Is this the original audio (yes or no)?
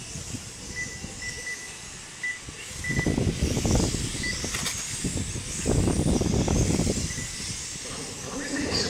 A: yes